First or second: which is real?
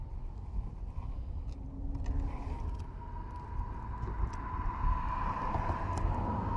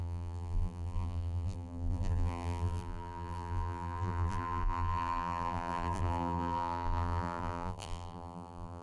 first